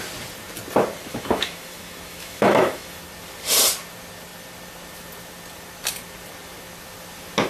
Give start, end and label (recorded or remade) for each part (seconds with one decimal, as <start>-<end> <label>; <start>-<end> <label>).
0.0-1.1 recorded; 1.1-3.0 remade; 3.0-7.5 recorded